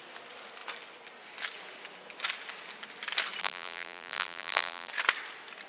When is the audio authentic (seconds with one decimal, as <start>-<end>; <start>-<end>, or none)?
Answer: 0.0-3.4; 4.9-5.7